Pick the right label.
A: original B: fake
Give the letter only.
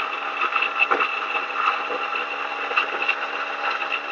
A